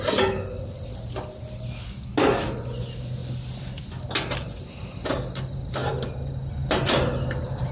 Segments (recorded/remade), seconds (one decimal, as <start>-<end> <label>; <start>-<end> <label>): 0.0-7.7 recorded